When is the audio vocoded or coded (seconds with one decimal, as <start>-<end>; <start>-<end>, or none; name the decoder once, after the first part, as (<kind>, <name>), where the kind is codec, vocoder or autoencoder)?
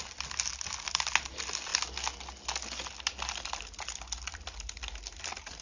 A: none